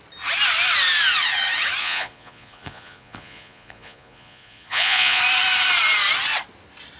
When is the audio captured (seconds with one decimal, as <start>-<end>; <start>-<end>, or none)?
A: 0.0-1.8; 5.2-7.0